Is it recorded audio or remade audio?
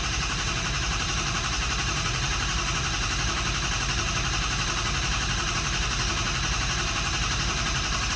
remade